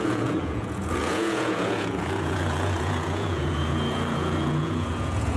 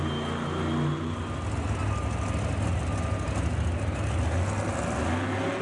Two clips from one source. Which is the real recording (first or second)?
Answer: second